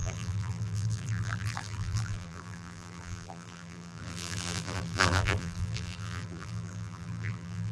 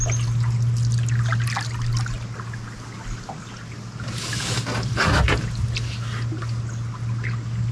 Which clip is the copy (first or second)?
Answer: first